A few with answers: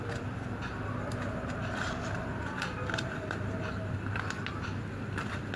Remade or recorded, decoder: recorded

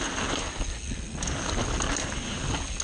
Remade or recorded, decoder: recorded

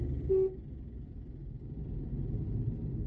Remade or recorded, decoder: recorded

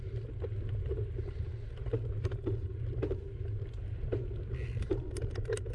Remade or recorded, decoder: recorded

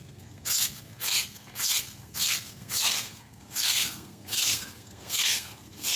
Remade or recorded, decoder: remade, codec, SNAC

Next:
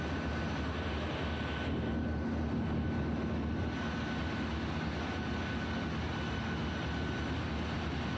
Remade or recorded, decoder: recorded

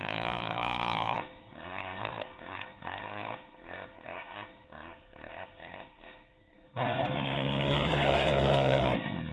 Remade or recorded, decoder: remade, codec, SNAC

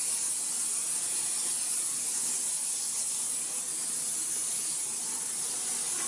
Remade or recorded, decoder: recorded